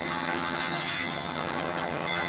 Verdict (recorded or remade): remade